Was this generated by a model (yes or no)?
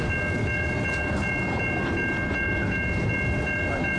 no